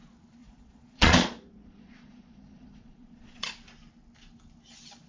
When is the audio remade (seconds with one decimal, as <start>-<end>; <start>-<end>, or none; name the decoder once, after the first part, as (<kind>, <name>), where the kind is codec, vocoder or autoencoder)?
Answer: 0.4-3.5 (vocoder, Vocos)